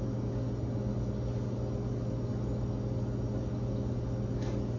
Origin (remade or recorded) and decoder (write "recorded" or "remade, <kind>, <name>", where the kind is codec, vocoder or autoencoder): recorded